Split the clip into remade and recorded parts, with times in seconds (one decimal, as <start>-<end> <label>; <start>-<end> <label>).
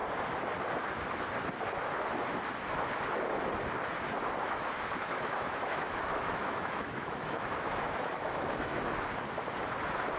0.0-4.4 recorded; 4.4-8.9 remade; 8.9-10.2 recorded